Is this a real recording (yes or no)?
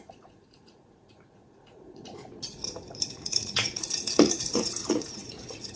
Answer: no